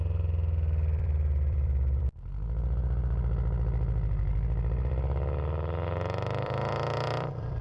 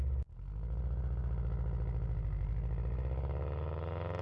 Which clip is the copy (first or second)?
first